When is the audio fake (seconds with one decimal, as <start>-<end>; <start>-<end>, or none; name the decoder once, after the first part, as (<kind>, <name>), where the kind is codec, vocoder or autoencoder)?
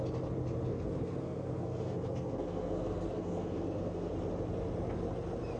0.7-4.1 (codec, SNAC)